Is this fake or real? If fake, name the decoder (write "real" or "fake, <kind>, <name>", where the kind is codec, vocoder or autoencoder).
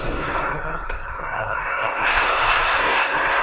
fake, codec, SNAC